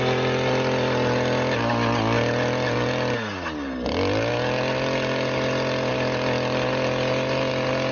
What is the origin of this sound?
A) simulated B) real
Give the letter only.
B